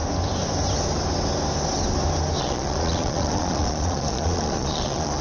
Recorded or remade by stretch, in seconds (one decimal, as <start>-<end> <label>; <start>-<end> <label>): 0.0-2.4 recorded; 2.4-5.2 remade